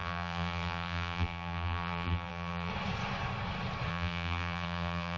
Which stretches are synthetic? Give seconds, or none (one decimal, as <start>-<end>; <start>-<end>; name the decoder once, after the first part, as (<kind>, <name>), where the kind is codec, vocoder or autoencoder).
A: 0.0-2.7 (vocoder, BigVGAN v2); 3.9-5.2